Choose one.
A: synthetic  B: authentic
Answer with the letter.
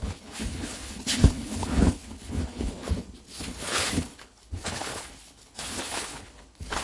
A